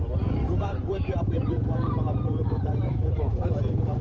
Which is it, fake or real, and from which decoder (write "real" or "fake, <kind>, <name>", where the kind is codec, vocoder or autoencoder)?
fake, vocoder, BigVGAN v2